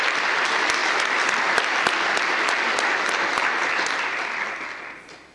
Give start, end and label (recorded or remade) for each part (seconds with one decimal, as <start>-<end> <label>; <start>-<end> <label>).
0.0-5.3 remade